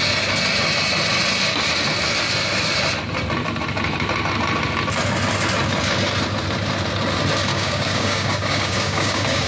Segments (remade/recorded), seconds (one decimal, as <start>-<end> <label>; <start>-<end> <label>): 0.0-7.5 recorded; 7.5-9.5 remade